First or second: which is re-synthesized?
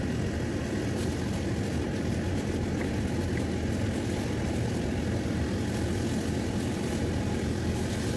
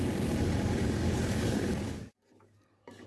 second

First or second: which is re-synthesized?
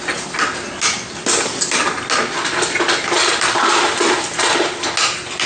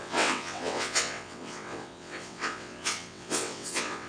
second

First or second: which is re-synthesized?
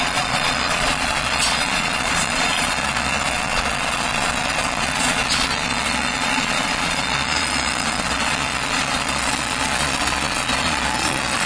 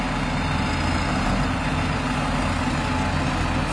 first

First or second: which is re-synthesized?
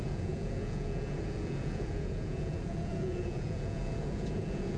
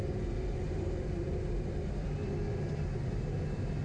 first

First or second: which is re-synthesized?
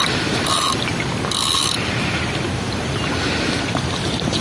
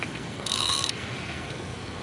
second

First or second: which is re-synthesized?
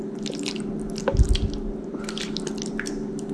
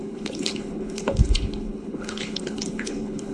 second